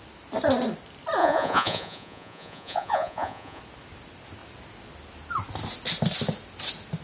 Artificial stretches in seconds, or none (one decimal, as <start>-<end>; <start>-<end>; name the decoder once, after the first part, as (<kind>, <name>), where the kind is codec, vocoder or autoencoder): 1.2-3.6 (vocoder, Vocos)

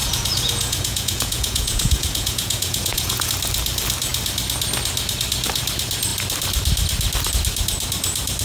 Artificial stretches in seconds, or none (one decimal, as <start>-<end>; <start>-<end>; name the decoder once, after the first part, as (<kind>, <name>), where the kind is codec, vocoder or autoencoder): 0.0-3.3 (vocoder, Vocos)

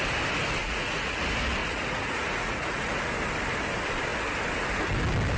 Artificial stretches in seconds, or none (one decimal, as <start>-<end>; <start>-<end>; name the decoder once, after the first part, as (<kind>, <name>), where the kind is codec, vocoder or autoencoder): 0.6-1.2 (vocoder, Vocos); 1.6-2.9

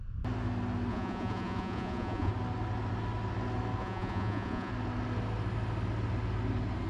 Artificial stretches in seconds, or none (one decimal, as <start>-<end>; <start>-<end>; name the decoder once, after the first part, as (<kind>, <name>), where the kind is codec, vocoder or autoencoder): 0.9-2.3 (vocoder, Vocos); 3.8-4.7

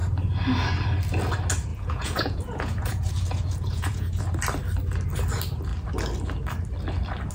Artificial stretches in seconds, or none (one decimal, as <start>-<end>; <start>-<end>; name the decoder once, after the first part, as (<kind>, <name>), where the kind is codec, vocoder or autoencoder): 1.7-4.2 (vocoder, Vocos)

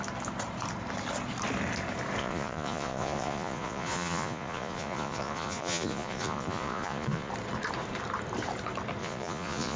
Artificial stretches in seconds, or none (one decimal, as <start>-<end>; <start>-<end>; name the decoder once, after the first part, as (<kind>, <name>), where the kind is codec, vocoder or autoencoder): 2.2-7.3 (vocoder, Vocos); 9.0-9.8

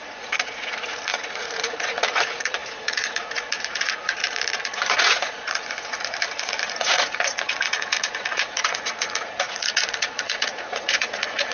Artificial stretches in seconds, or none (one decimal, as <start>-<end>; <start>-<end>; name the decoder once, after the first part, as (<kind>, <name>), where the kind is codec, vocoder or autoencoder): 0.0-11.5 (vocoder, Vocos)

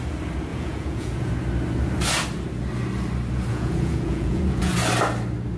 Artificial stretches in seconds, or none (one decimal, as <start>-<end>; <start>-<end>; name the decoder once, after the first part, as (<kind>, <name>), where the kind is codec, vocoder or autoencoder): 0.5-1.3 (vocoder, Vocos); 3.5-4.7